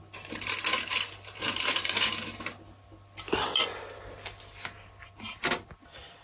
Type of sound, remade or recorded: recorded